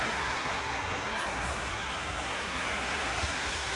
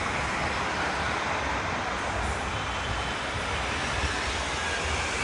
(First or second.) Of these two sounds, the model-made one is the first